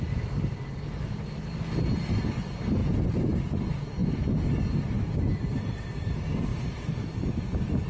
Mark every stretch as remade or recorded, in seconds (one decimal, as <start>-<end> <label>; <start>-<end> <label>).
0.0-2.8 recorded; 2.8-3.6 remade; 3.6-6.5 recorded; 6.5-7.9 remade